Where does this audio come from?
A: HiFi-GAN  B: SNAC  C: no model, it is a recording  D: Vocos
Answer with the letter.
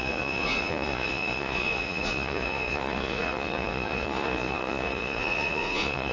D